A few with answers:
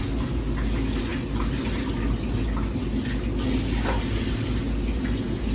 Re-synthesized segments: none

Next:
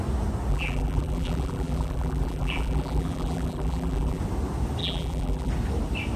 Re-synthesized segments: 0.5-4.2 (vocoder, BigVGAN v2); 4.8-5.5

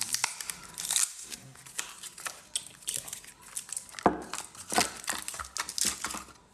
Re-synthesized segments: 1.1-1.6 (codec, SNAC)

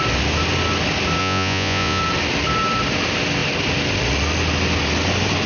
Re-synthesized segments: 1.2-2.0 (vocoder, Vocos)

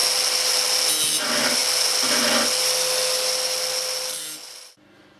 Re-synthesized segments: none

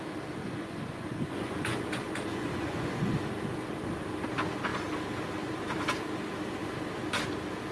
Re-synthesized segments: 0.4-3.1 (vocoder, Vocos)

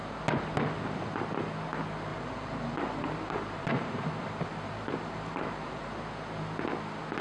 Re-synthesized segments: 2.1-5.9 (vocoder, BigVGAN v2)